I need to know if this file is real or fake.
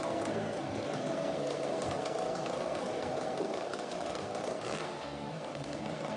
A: fake